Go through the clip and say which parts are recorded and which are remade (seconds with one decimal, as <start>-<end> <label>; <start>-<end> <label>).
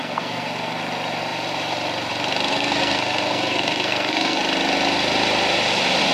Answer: 0.0-0.8 remade; 0.8-2.5 recorded; 2.5-4.4 remade; 4.4-6.1 recorded